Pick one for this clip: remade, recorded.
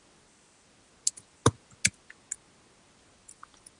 recorded